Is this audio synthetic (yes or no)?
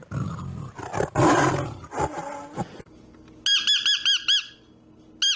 no